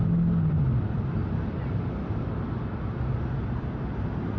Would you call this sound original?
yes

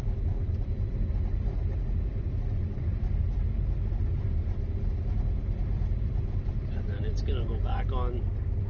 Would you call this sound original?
yes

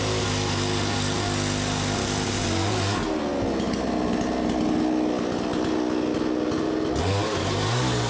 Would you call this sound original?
yes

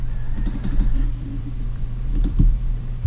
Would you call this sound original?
no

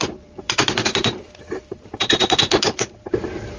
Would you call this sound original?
no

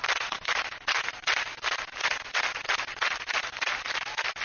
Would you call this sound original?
yes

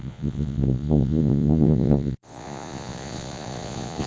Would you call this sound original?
no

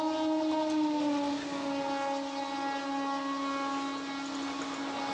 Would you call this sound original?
yes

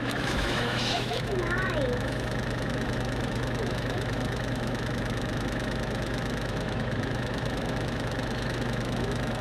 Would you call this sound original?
no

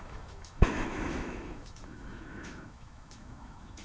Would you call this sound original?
no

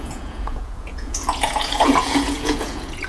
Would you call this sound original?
no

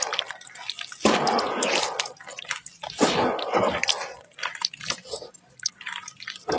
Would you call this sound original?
yes